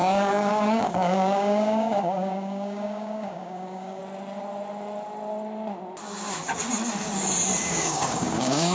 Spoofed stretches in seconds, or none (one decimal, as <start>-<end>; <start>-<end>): 0.0-4.0; 7.7-8.7

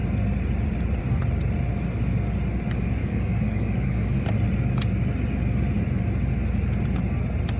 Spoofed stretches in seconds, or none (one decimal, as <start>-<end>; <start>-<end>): 3.0-4.2

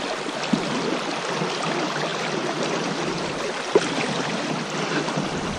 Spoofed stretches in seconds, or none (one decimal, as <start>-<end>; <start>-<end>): none

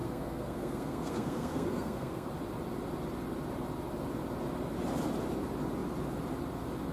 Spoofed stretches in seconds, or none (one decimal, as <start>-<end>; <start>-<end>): 0.0-2.3

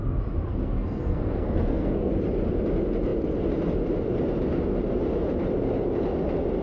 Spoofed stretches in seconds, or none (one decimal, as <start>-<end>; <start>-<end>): 0.5-2.1